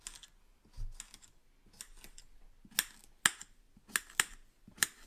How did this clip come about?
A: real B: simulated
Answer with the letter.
A